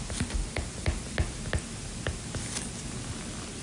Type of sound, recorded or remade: recorded